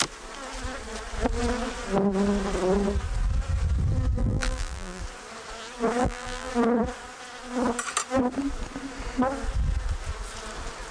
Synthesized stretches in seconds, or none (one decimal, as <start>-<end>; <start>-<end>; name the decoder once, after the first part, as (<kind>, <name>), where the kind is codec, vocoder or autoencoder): 4.2-5.0 (vocoder, BigVGAN v2); 6.0-6.5

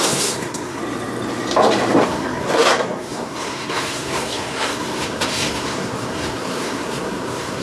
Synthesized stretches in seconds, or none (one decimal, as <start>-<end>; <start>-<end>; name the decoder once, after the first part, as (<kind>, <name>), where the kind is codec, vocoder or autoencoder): 0.0-0.8 (codec, SNAC); 2.0-7.6

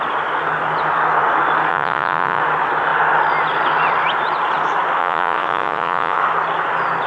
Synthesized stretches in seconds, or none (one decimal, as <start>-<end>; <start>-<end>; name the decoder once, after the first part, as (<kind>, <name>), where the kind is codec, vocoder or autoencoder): 1.7-2.4 (vocoder, Vocos); 5.0-6.2

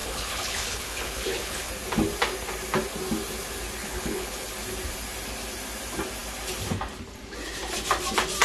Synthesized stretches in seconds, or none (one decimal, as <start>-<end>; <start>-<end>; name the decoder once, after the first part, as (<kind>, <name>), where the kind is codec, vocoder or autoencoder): 0.0-1.7 (codec, HILCodec); 3.8-4.5

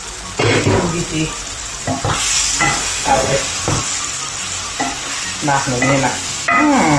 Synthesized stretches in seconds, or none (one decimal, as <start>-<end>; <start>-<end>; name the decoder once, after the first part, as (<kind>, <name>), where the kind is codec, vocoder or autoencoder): 2.8-3.4 (autoencoder, DAC-VAE)

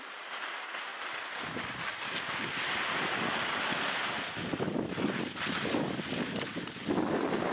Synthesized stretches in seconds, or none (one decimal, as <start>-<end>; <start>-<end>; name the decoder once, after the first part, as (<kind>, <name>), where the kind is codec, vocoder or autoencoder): none

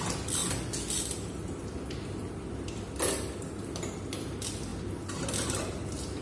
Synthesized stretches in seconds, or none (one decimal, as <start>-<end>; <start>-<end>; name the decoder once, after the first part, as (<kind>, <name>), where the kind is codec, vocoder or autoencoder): none

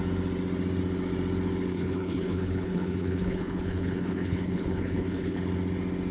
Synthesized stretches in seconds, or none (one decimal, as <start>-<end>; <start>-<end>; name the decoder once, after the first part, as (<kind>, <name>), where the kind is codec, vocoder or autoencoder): 1.7-5.4 (codec, HILCodec)